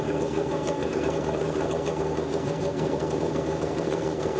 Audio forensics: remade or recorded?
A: remade